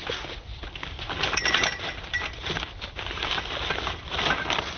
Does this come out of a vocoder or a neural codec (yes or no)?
yes